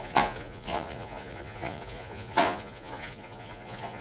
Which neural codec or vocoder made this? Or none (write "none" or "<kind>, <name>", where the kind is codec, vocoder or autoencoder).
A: vocoder, Vocos